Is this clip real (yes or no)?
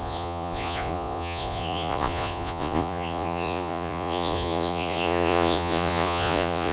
no